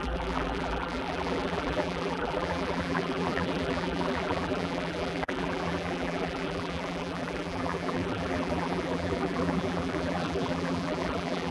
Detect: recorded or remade remade